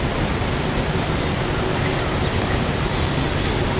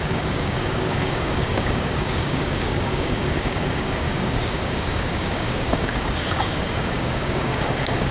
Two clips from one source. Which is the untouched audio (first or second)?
first